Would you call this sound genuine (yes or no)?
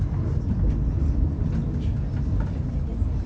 yes